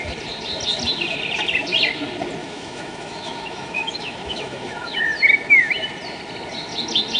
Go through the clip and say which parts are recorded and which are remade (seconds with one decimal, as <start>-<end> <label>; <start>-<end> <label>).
0.0-2.4 recorded; 2.4-5.0 remade; 5.0-7.2 recorded